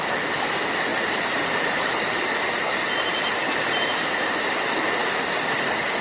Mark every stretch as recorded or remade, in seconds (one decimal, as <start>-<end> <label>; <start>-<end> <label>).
0.0-6.0 recorded